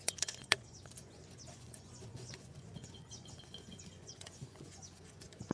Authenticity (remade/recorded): remade